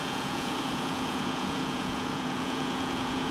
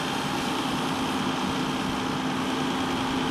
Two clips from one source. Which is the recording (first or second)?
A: second